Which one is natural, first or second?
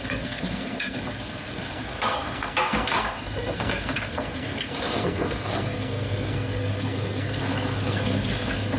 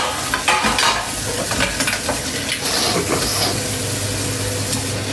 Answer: second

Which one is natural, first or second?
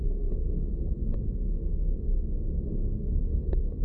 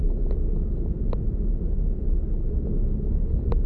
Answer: second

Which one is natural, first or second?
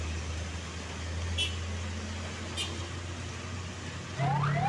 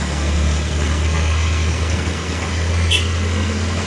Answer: first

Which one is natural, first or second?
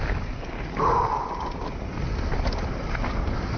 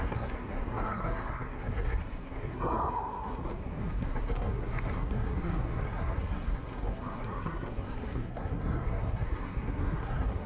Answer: first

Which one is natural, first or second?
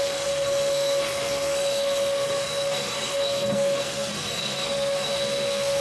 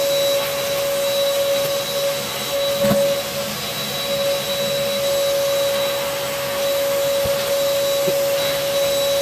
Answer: second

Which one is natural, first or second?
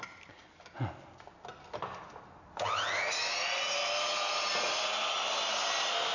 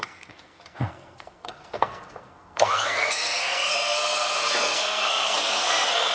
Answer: first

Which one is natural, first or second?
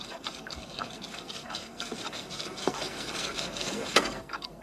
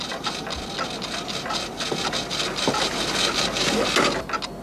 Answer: second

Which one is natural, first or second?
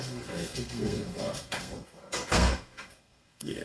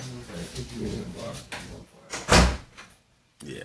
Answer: second